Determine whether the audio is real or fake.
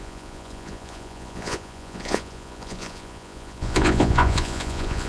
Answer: fake